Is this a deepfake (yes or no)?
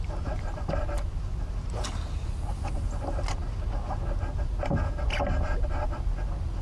no